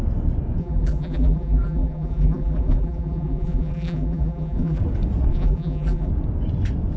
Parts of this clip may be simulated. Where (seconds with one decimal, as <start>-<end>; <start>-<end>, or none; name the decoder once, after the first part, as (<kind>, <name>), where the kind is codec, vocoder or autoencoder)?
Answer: 0.6-4.8 (vocoder, BigVGAN v2); 5.3-6.1